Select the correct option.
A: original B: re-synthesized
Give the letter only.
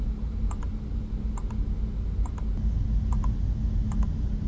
A